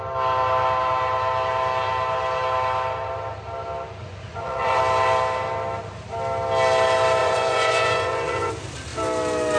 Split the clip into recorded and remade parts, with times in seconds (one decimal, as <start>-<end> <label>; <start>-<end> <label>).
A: 0.0-4.0 recorded; 4.0-4.8 remade; 4.8-7.2 recorded; 7.2-8.5 remade; 8.5-9.6 recorded

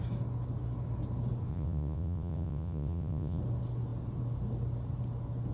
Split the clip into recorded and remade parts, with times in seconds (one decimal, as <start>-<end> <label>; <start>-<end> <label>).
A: 0.0-1.5 recorded; 1.5-3.4 remade; 3.4-5.5 recorded

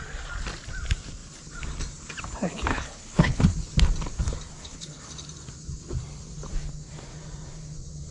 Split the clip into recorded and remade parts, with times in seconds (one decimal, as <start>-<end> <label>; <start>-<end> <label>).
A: 0.0-2.7 recorded; 2.7-3.4 remade; 3.4-4.6 recorded; 4.6-5.1 remade; 5.1-8.1 recorded

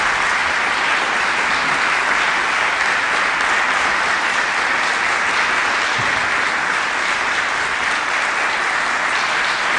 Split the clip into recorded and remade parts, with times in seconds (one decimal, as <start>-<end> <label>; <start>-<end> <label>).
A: 0.0-9.8 recorded